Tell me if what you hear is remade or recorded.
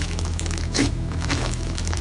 remade